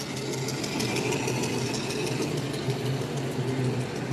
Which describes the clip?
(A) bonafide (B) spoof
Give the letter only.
A